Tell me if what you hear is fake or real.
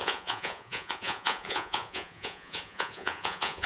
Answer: fake